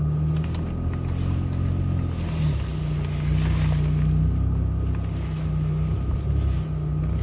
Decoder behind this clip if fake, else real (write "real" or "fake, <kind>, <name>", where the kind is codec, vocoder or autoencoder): real